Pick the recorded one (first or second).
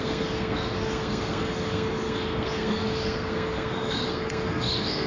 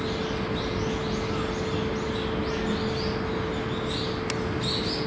second